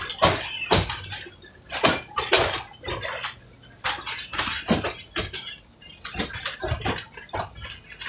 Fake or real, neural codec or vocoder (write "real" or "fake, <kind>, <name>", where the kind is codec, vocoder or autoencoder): real